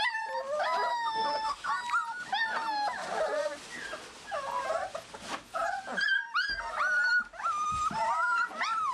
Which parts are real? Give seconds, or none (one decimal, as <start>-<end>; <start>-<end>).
0.0-0.9; 1.7-8.9